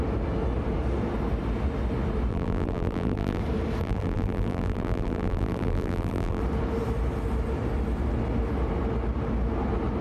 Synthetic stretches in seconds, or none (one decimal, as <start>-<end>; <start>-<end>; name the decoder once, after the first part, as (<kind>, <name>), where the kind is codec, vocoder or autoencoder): 2.3-3.4 (vocoder, BigVGAN v2); 3.8-6.4